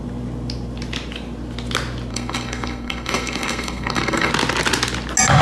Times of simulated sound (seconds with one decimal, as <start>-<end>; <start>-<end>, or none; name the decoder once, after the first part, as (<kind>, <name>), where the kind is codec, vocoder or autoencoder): 2.1-4.3 (codec, SNAC)